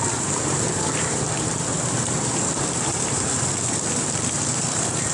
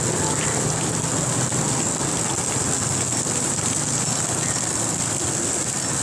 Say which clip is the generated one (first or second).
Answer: first